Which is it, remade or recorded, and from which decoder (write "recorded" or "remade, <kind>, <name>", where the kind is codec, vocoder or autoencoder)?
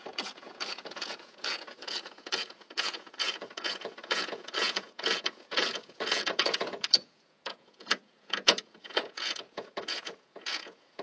remade, vocoder, Vocos